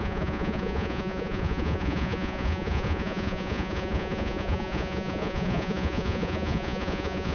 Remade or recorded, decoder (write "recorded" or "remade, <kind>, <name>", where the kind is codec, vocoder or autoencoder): remade, vocoder, Vocos